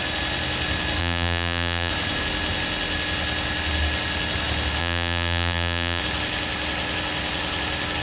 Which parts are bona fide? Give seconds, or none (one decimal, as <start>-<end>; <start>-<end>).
0.0-1.0; 1.9-4.8; 6.0-8.0